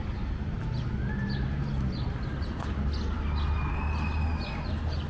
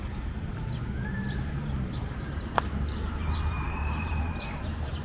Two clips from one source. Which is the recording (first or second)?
first